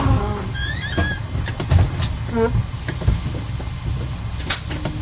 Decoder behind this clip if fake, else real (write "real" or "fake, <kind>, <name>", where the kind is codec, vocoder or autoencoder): real